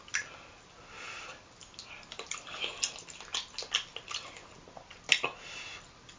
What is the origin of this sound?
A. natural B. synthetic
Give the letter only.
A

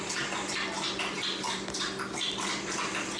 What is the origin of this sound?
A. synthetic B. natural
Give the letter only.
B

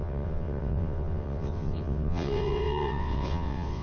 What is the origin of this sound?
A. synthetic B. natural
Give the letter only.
A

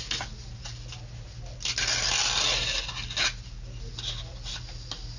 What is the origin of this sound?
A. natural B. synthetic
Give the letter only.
A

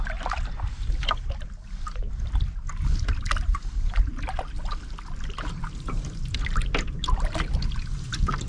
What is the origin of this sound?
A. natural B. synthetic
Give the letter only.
A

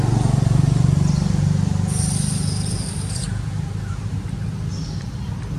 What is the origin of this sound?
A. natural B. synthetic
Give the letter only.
A